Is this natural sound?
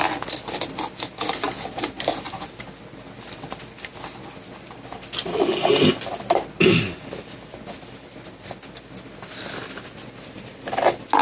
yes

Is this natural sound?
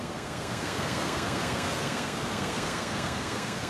no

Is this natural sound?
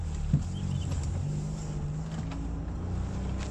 yes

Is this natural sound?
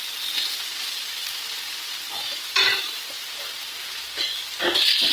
yes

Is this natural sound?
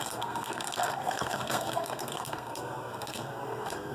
no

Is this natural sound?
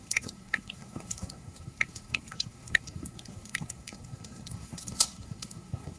no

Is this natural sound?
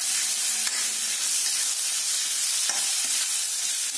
yes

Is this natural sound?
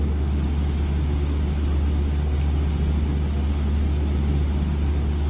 yes